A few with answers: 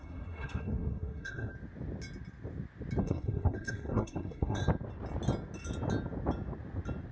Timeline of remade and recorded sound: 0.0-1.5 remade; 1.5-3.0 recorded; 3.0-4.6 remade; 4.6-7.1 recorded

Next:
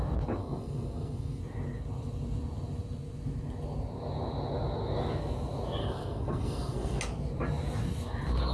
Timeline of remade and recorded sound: 0.0-0.4 recorded; 0.4-1.4 remade; 1.4-5.8 recorded; 5.8-7.0 remade; 7.0-8.5 recorded

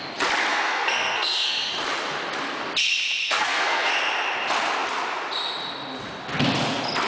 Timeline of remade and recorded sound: 0.0-0.5 recorded; 0.5-1.7 remade; 1.7-3.2 recorded; 3.2-3.9 remade; 3.9-7.1 recorded

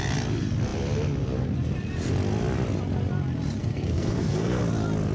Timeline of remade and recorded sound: 0.0-3.6 recorded; 3.6-4.6 remade; 4.6-5.1 recorded